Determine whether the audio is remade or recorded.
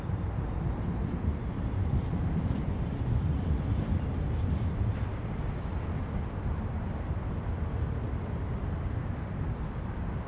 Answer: remade